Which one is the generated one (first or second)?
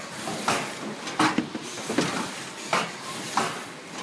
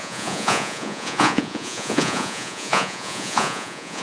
second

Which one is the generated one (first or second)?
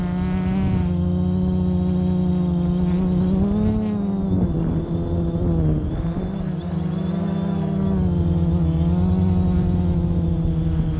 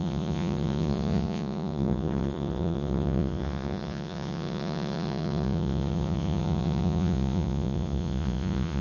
second